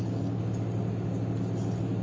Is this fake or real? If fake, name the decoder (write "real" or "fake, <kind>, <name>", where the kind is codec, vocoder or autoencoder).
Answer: real